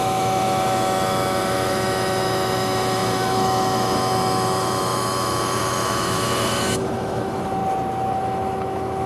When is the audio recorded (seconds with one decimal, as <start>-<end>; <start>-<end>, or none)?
7.6-8.2